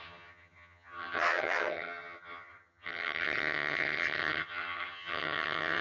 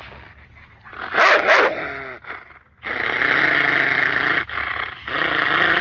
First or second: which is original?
second